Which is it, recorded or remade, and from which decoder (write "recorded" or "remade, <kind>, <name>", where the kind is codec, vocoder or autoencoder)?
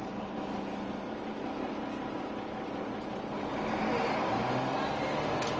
recorded